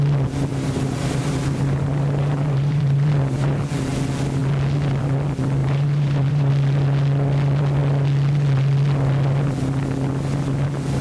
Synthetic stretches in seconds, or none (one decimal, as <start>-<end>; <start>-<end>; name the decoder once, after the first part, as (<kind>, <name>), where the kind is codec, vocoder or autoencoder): 0.5-3.6 (vocoder, BigVGAN v2); 5.6-6.5